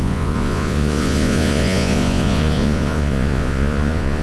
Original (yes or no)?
no